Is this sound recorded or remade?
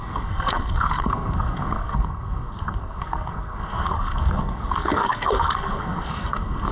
remade